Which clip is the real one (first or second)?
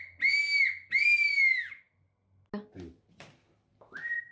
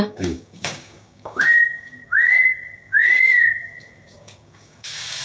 first